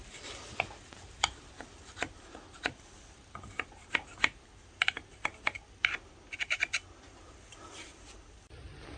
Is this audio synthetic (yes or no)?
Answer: no